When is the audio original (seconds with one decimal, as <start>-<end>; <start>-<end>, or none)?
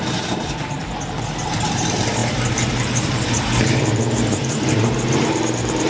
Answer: 0.8-1.5